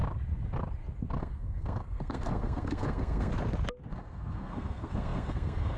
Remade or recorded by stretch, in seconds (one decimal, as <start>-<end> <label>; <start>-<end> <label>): 0.0-1.2 recorded; 1.2-3.3 remade; 3.3-3.9 recorded; 3.9-5.8 remade